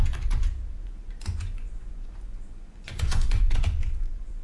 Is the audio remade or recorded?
remade